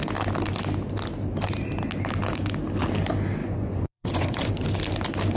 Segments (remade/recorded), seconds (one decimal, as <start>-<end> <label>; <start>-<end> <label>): 0.0-3.4 recorded; 3.4-4.5 remade; 4.5-5.4 recorded